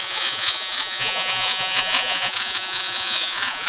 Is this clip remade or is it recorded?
remade